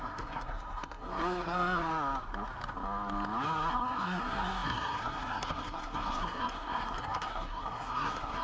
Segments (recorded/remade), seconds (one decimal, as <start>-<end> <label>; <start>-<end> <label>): 0.0-1.9 remade; 1.9-3.7 recorded; 3.7-8.4 remade